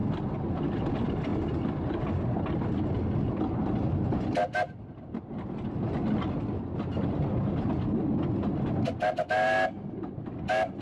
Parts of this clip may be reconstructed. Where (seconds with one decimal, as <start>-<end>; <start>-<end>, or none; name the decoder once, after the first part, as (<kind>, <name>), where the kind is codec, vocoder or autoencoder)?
none